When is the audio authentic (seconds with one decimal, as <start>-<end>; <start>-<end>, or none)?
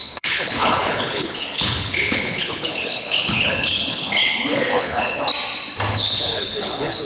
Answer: 5.3-5.9